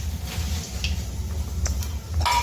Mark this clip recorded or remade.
recorded